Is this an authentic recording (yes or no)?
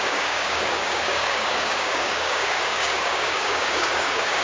no